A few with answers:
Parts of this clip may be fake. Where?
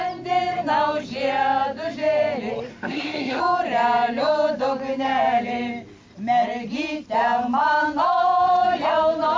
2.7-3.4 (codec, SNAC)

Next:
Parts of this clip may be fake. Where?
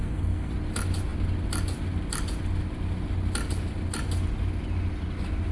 0.0-0.5 (codec, SNAC)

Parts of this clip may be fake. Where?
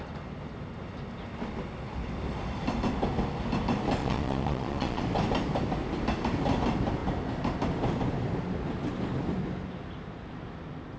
4.0-5.0 (vocoder, Vocos)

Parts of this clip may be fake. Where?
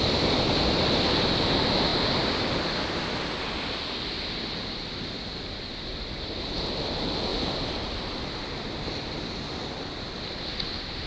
7.3-10.3 (vocoder, BigVGAN v2)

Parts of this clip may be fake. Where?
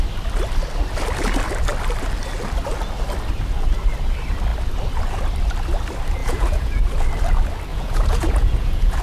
6.2-6.8 (vocoder, Vocos); 7.7-9.0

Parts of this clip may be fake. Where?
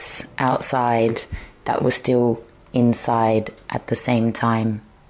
1.1-1.9 (autoencoder, DAC-VAE)